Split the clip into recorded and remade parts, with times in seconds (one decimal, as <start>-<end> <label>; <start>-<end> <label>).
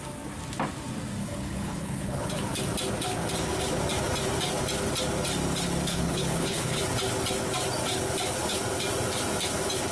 0.0-1.2 recorded; 1.2-2.3 remade; 2.3-5.9 recorded; 5.9-6.8 remade; 6.8-9.9 recorded